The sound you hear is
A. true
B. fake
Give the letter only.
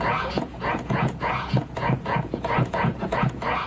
B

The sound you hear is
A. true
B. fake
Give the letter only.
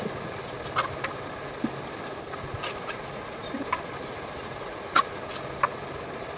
A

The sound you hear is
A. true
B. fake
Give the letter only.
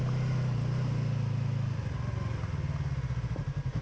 A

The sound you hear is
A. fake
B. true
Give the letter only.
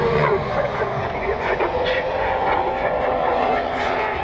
A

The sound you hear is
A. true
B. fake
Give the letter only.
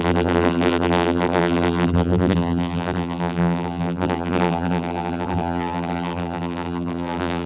B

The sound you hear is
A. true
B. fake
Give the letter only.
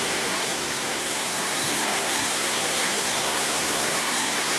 B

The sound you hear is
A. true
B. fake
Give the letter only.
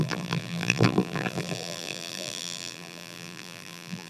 B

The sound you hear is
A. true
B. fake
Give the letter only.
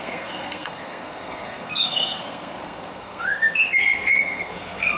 B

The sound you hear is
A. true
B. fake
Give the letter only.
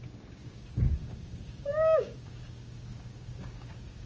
B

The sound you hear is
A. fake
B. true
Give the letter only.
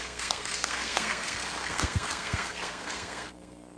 A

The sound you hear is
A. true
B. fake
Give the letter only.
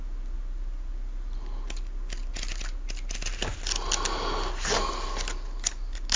A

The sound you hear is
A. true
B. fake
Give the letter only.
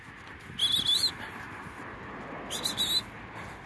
A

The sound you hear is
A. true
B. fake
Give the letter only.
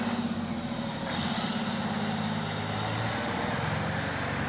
A